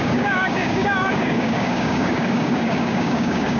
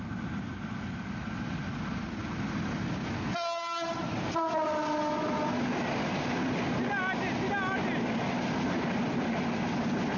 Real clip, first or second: second